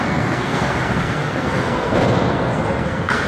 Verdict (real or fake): fake